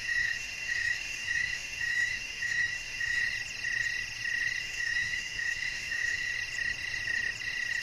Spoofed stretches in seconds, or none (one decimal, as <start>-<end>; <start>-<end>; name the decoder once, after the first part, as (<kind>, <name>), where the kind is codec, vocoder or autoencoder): 0.0-3.2 (autoencoder, DAC-VAE); 4.6-6.3